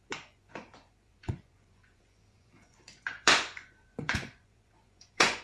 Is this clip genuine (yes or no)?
no